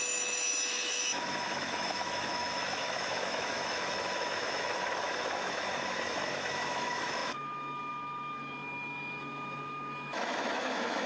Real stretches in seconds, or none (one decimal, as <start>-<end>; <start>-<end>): none